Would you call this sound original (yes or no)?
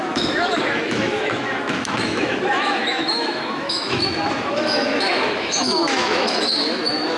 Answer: no